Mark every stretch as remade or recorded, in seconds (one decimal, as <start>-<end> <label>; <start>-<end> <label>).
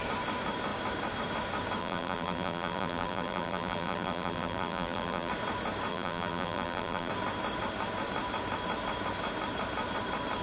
0.0-1.8 recorded; 1.8-5.3 remade; 5.3-5.9 recorded; 5.9-7.1 remade; 7.1-10.4 recorded